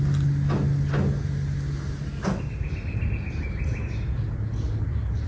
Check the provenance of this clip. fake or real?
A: real